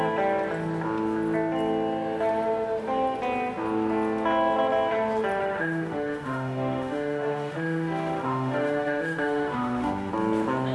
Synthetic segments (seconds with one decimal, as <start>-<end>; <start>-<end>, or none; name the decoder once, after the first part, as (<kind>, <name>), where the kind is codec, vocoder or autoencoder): 5.4-10.1 (autoencoder, DAC-VAE)

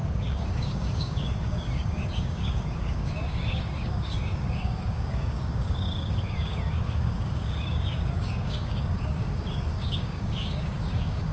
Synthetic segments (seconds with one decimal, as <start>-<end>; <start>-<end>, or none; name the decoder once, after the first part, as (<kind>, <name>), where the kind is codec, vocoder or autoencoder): 0.0-11.3 (codec, DAC)